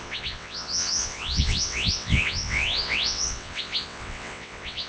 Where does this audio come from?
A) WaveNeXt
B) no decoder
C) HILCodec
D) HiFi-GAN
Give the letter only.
A